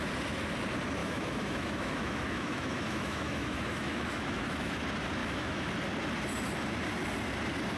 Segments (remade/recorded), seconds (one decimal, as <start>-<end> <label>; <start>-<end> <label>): 0.0-1.0 recorded; 1.0-4.7 remade; 4.7-5.2 recorded; 5.2-5.7 remade; 5.7-7.8 recorded